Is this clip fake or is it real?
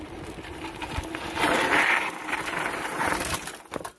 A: real